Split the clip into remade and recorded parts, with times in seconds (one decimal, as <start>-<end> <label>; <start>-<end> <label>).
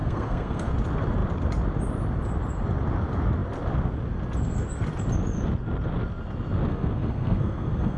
0.0-0.7 remade; 0.7-6.7 recorded; 6.7-8.0 remade